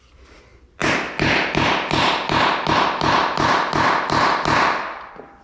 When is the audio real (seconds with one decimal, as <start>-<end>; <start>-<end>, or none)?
0.0-5.4